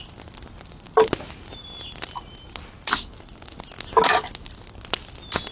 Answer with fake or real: real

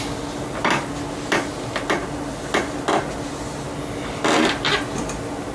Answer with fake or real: real